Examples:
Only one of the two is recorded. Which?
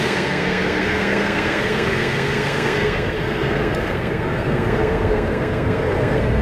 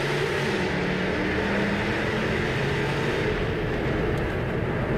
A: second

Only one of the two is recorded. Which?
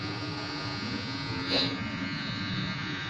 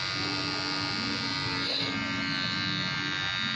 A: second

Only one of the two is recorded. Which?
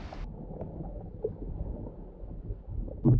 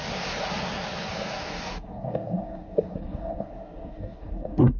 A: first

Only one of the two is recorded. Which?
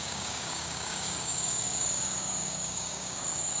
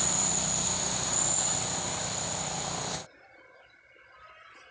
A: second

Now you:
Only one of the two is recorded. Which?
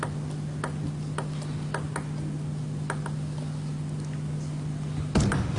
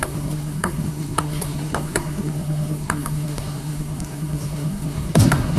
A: first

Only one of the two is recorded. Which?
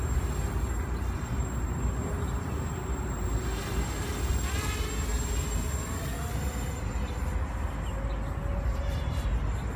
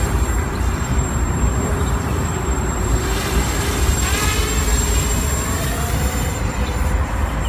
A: first